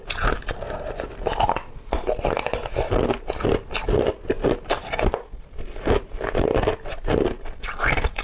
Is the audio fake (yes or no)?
no